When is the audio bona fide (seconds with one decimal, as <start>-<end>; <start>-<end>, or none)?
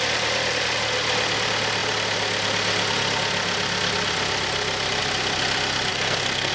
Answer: 0.0-5.9